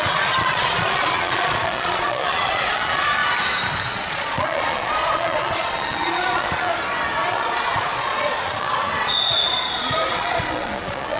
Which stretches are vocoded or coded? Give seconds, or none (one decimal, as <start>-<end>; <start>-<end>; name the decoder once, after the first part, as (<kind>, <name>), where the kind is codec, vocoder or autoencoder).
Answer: 0.0-3.2 (vocoder, Vocos); 3.9-6.7; 7.3-11.2